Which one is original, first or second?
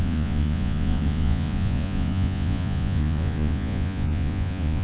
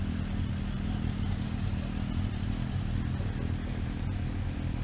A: second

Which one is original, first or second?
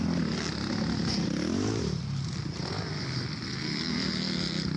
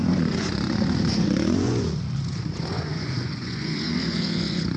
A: first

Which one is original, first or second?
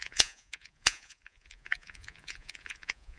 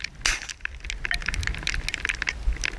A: second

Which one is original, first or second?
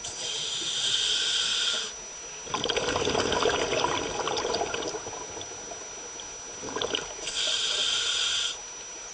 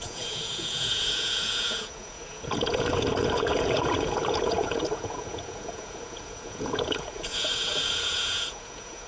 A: first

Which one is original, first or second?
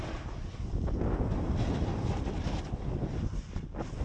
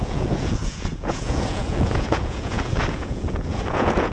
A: first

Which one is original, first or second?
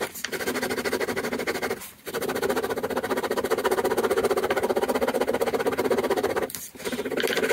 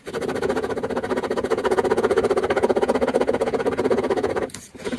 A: first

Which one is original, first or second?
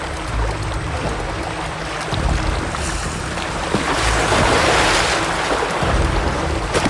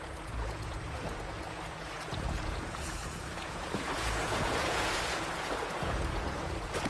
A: first